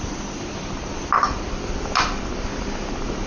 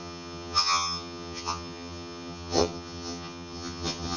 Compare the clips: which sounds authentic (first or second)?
first